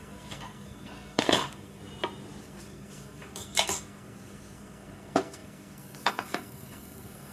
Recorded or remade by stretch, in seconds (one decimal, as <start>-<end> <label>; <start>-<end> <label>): 0.0-1.8 remade; 1.8-2.4 recorded; 2.4-7.3 remade